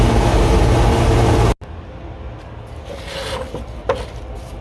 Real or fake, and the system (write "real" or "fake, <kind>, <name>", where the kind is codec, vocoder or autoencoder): real